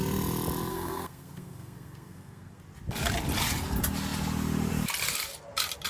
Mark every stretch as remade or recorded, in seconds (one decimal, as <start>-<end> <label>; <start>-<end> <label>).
0.0-0.7 recorded; 0.7-2.6 remade; 2.6-5.9 recorded